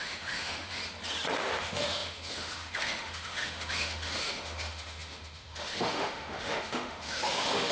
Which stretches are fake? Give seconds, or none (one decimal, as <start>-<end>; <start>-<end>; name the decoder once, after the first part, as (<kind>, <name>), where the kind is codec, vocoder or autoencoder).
0.0-0.8 (autoencoder, DAC-VAE); 1.6-7.7